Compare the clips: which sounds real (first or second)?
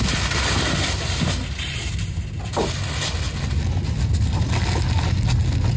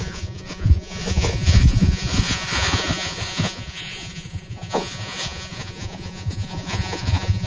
first